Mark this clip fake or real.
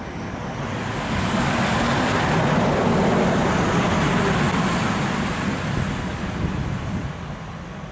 real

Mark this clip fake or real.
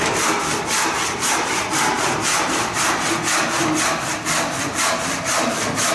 real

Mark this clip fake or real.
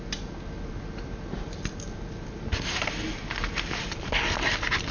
real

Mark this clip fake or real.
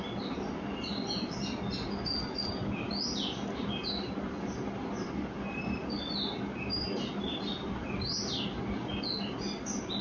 real